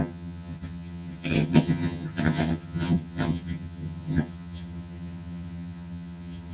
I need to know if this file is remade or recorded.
remade